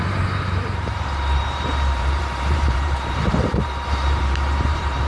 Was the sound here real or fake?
fake